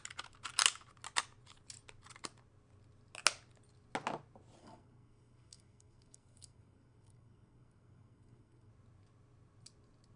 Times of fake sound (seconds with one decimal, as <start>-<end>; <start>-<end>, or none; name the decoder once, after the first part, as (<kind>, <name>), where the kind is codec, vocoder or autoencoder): 4.6-8.7 (codec, SNAC)